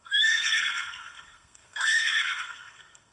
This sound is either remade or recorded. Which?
remade